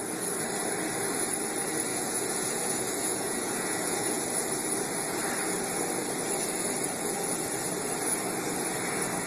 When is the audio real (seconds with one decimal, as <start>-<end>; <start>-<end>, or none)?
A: 0.0-1.9; 4.2-9.3